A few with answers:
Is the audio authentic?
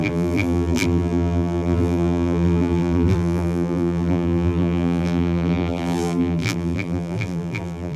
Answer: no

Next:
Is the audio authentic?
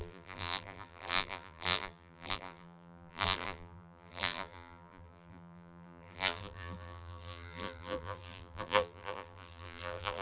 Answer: no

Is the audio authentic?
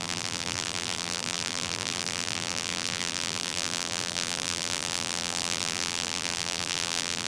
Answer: no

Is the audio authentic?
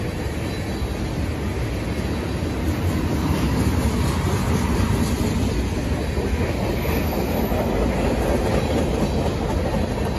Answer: yes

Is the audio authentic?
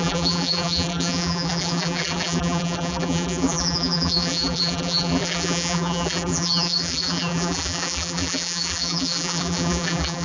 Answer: no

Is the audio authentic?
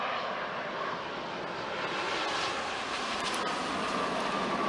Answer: yes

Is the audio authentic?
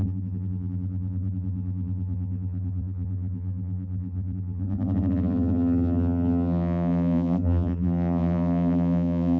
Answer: no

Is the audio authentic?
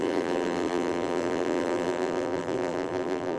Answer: no